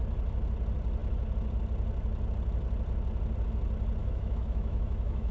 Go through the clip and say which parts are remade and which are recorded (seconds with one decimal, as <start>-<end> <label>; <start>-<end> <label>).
0.0-4.0 recorded; 4.0-5.3 remade